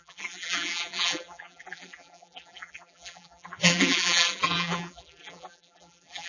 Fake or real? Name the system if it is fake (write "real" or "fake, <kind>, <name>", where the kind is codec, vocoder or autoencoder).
fake, vocoder, BigVGAN v2